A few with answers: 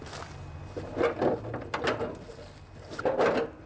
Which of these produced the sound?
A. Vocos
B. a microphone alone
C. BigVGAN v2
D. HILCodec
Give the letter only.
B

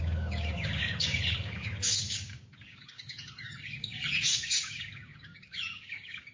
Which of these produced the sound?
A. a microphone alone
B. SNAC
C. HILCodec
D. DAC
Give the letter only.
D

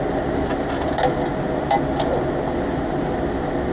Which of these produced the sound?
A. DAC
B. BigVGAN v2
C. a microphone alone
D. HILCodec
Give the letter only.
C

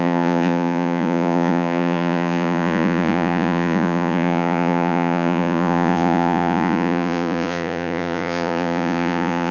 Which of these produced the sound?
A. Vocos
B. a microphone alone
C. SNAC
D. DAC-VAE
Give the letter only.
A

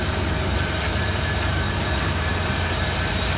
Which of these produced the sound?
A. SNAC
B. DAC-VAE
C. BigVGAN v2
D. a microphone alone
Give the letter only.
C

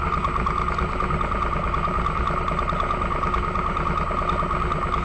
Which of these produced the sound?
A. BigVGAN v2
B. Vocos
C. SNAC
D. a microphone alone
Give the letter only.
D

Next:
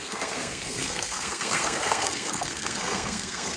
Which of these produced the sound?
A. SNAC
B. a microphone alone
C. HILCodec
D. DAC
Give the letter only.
A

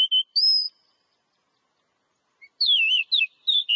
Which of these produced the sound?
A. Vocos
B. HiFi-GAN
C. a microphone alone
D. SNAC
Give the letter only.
C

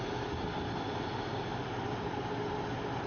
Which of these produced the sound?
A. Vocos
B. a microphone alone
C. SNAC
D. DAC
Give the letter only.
B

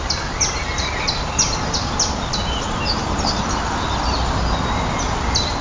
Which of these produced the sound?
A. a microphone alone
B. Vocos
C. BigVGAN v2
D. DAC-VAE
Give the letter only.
A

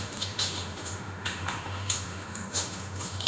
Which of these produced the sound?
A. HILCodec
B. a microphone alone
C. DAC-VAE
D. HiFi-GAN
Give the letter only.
C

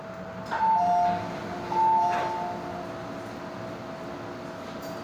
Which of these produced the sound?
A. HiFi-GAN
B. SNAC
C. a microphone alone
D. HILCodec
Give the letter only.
C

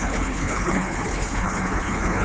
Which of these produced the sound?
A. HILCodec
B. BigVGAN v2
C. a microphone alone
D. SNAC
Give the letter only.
A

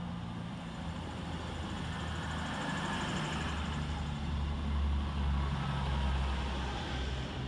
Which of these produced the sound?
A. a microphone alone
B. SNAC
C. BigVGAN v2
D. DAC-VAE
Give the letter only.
A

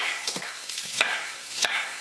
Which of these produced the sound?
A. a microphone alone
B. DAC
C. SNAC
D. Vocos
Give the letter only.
C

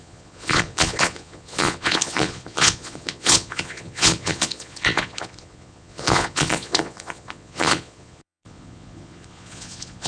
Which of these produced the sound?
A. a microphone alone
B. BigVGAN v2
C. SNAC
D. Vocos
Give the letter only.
D